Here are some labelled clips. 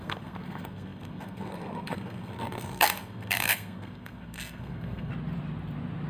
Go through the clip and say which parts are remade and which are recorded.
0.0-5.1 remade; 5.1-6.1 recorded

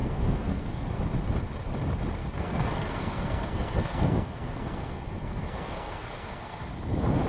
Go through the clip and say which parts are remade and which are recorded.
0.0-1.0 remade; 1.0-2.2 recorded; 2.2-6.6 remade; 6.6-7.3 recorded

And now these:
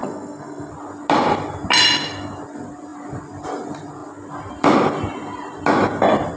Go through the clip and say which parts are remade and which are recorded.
0.0-0.7 remade; 0.7-6.4 recorded

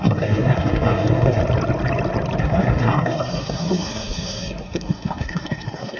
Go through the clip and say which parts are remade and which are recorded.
0.0-1.4 remade; 1.4-2.4 recorded; 2.4-6.0 remade

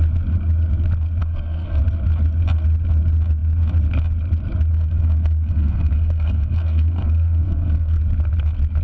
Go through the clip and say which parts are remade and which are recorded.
0.0-1.2 recorded; 1.2-1.8 remade; 1.8-4.7 recorded; 4.7-8.0 remade; 8.0-8.8 recorded

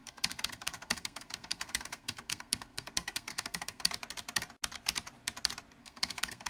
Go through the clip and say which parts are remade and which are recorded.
0.0-3.9 remade; 3.9-5.8 recorded; 5.8-6.5 remade

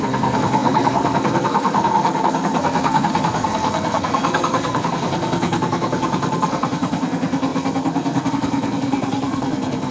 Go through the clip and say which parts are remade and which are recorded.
0.0-9.9 remade